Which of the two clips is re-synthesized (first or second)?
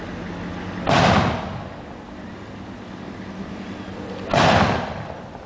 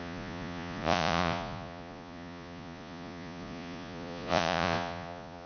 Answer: second